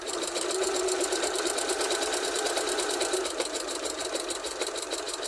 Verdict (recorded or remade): remade